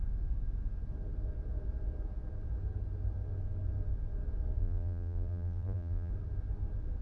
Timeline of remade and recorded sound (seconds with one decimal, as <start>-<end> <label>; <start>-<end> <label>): 0.0-4.6 recorded; 4.6-6.1 remade; 6.1-7.0 recorded